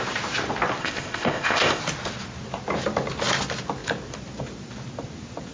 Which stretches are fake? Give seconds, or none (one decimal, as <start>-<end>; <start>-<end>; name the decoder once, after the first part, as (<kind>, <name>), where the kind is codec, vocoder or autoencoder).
0.8-1.8 (codec, ZipCodec)